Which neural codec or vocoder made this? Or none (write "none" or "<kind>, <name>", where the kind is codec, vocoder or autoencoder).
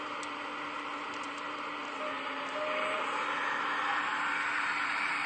none